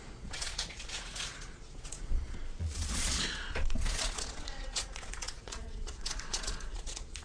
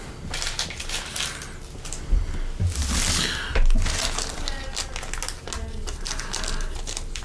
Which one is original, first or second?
second